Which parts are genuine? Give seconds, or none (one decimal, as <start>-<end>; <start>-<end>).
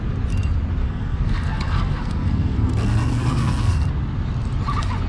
0.0-0.8; 3.9-5.1